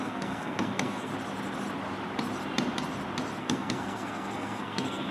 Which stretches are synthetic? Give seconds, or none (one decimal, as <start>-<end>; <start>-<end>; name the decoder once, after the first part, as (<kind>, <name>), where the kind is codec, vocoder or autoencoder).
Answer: 0.0-1.1 (codec, SNAC); 3.4-5.1

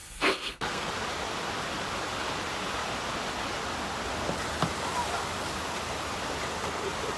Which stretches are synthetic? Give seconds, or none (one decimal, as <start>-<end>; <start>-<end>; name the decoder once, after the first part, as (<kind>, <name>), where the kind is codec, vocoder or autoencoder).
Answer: 0.0-0.9 (codec, SNAC)

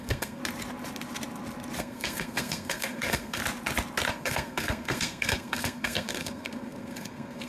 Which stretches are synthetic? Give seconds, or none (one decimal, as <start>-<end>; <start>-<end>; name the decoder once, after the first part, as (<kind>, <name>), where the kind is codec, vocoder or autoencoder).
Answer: 0.0-0.4 (codec, SNAC); 1.8-3.4; 4.1-7.5

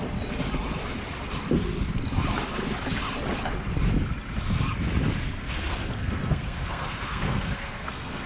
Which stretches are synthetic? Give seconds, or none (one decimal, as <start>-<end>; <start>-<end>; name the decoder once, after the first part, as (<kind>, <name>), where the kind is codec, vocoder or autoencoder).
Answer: 5.4-8.3 (codec, SNAC)

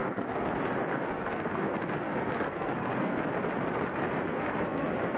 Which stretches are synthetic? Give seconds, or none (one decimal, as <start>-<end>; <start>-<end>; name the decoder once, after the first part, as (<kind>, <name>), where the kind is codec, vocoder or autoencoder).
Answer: 0.0-3.1 (codec, SNAC); 4.3-5.2

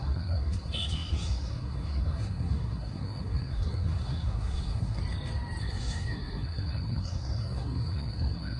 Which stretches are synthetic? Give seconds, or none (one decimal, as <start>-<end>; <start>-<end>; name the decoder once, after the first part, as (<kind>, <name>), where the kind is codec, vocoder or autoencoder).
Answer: 0.0-5.0 (codec, SNAC); 5.6-8.6